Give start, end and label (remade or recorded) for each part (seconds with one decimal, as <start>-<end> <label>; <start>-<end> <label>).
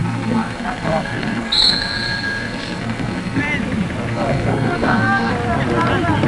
0.0-3.4 remade; 3.4-4.1 recorded; 4.1-5.3 remade; 5.3-6.3 recorded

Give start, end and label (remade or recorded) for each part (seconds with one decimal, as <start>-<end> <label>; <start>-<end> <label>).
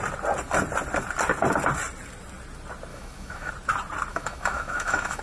0.0-2.9 recorded; 2.9-3.5 remade; 3.5-4.1 recorded; 4.1-5.2 remade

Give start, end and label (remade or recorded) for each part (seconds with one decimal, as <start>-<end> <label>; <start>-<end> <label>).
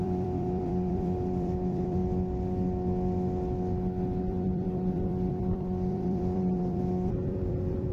0.0-2.0 remade; 2.0-4.2 recorded; 4.2-7.9 remade